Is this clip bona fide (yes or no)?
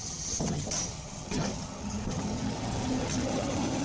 no